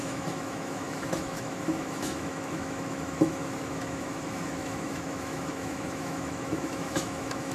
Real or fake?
fake